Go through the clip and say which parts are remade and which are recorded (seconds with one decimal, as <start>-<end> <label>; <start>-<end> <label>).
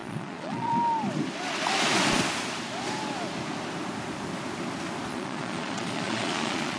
0.0-0.7 remade; 0.7-5.1 recorded; 5.1-6.8 remade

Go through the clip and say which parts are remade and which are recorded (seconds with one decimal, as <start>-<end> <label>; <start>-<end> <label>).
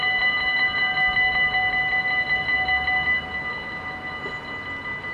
0.0-5.1 recorded